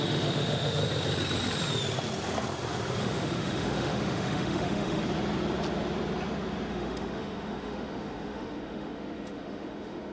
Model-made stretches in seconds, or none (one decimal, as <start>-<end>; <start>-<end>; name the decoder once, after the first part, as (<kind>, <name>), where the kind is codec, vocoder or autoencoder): 0.0-0.8 (autoencoder, DAC-VAE); 3.0-5.0; 6.7-10.1